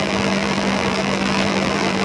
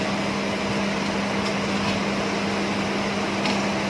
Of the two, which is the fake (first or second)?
first